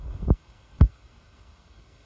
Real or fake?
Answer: fake